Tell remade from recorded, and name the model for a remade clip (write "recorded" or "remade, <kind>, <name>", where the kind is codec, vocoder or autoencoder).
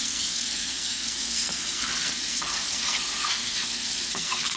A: remade, codec, SNAC